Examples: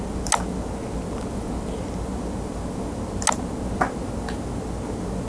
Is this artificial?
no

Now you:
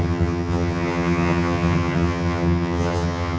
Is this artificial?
yes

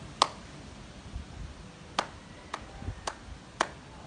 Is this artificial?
no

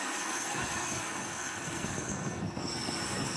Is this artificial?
yes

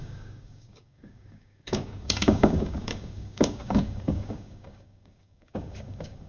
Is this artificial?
yes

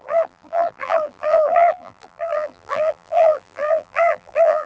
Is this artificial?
yes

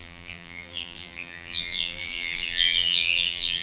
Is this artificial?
yes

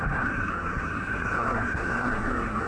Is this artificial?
yes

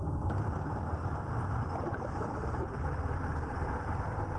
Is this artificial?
yes